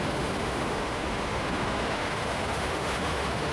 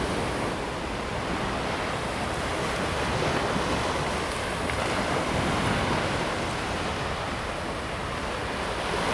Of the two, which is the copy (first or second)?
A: first